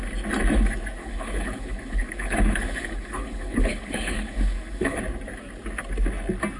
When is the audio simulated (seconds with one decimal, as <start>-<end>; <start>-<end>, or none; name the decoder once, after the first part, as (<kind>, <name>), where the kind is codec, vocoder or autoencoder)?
1.0-5.0 (codec, HILCodec)